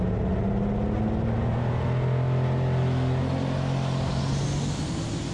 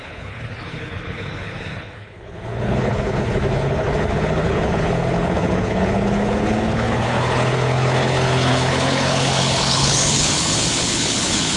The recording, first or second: first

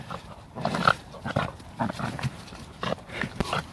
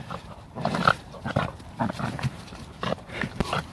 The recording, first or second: first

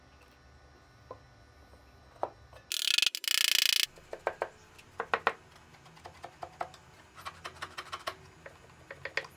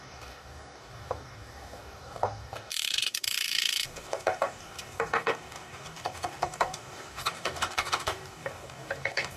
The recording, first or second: first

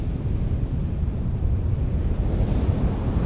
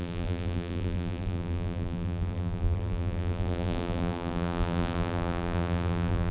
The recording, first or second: first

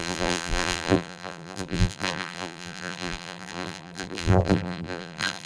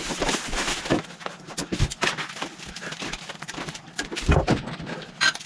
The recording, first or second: second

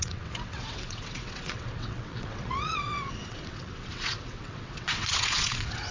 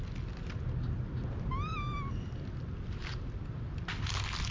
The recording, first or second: second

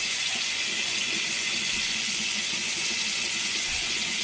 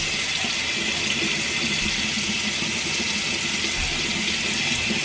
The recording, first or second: second